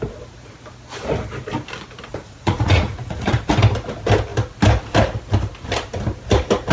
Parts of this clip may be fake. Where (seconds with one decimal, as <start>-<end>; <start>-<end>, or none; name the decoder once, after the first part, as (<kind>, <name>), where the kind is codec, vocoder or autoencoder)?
2.1-3.5 (vocoder, Vocos)